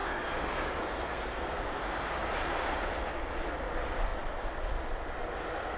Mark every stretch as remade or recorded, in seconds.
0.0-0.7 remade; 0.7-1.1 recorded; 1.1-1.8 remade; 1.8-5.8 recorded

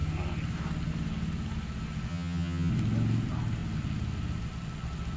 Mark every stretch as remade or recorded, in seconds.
0.0-2.1 recorded; 2.1-2.7 remade; 2.7-5.2 recorded

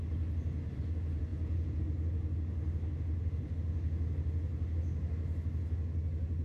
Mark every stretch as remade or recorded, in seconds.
0.0-1.3 recorded; 1.3-1.8 remade; 1.8-6.4 recorded

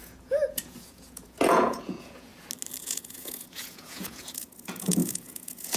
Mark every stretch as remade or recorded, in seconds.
0.0-2.3 remade; 2.3-2.8 recorded; 2.8-5.8 remade

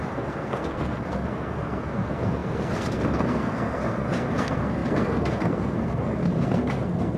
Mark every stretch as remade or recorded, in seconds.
0.0-7.2 remade